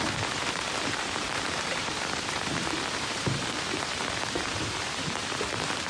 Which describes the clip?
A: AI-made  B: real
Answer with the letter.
A